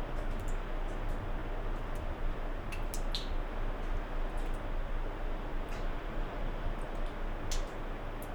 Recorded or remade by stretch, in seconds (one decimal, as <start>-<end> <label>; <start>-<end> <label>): 0.0-5.5 recorded; 5.5-6.4 remade; 6.4-8.3 recorded